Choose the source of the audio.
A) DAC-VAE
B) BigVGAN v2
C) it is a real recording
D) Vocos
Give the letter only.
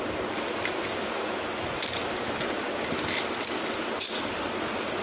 C